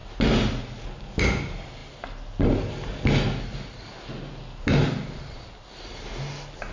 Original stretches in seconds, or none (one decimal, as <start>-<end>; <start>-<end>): 0.0-6.7